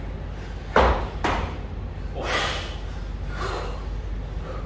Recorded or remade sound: recorded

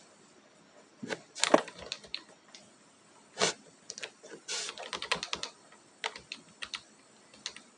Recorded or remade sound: recorded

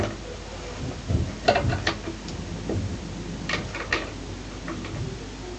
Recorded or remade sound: recorded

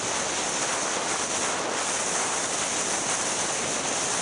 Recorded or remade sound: recorded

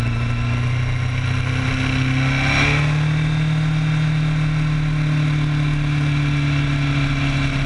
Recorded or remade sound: recorded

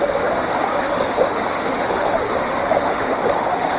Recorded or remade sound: remade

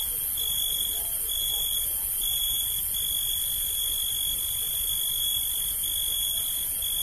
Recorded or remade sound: recorded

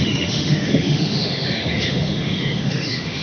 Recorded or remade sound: remade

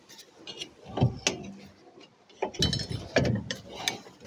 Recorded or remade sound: recorded